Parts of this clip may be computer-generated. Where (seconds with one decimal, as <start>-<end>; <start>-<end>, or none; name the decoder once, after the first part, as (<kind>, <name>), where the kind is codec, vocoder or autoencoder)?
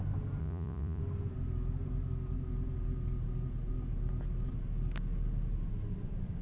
0.4-1.0 (vocoder, Vocos)